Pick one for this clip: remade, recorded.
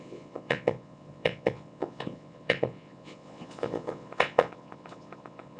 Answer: remade